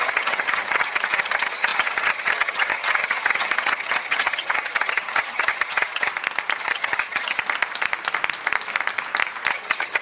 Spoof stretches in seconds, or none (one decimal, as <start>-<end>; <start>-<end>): 0.0-6.1; 6.6-7.4; 9.5-10.0